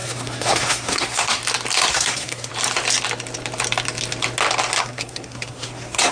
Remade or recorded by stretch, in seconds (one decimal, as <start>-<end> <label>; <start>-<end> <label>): 0.0-1.4 remade; 1.4-1.9 recorded; 1.9-2.5 remade; 2.5-4.8 recorded; 4.8-6.1 remade